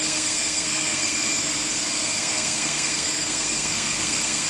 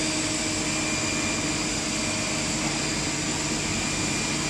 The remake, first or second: first